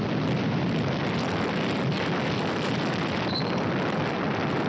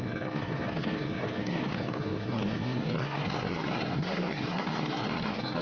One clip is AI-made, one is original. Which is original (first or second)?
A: first